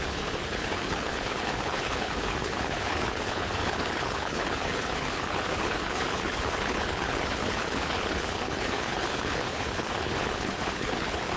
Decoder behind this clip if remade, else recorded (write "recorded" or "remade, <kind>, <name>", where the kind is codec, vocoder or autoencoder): remade, codec, HILCodec